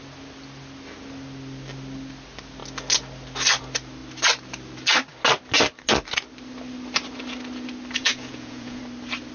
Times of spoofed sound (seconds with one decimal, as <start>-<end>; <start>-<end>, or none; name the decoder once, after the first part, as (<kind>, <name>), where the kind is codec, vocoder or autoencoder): 8.0-8.8 (vocoder, Vocos)